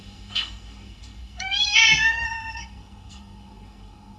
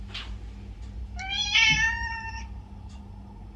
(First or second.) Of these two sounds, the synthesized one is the first